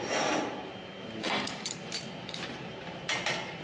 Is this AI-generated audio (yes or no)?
yes